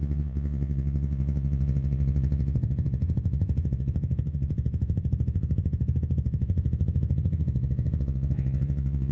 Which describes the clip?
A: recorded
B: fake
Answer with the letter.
B